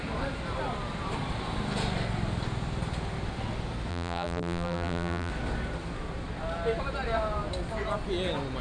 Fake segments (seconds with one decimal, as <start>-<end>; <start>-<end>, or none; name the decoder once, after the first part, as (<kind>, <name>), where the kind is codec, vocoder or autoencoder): 3.9-5.3 (vocoder, BigVGAN v2)